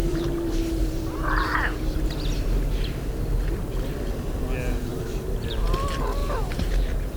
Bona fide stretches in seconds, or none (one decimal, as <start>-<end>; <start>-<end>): 2.1-4.9; 5.5-6.2